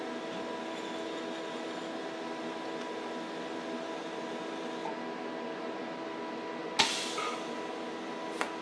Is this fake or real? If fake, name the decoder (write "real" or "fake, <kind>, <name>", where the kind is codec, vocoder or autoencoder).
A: real